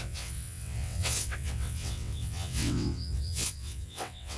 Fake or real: fake